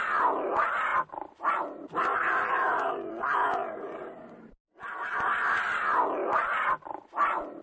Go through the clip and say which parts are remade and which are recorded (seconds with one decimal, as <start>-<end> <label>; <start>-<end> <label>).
0.0-6.2 recorded; 6.2-7.6 remade